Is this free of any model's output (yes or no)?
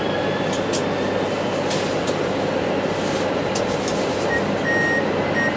yes